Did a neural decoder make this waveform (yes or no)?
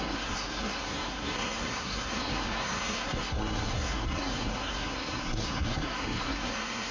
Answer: yes